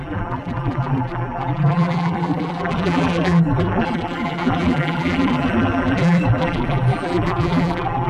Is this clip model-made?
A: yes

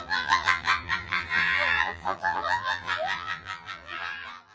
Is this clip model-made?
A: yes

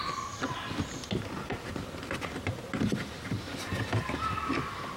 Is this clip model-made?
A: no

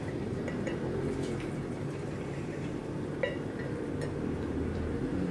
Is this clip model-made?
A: yes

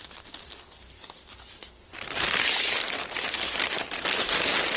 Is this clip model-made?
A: no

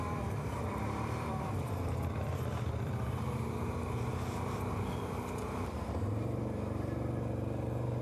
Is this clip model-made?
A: yes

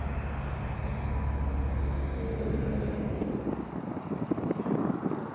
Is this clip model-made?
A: no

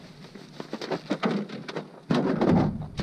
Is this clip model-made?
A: no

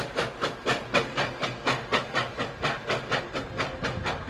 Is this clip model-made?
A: no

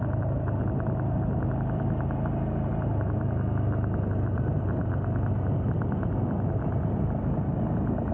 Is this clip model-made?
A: no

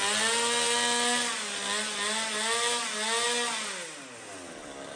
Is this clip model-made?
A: no